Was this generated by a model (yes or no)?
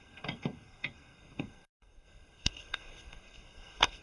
yes